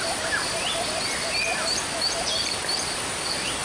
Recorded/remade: recorded